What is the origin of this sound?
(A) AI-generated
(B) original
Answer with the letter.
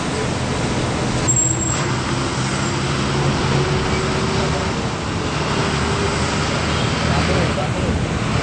B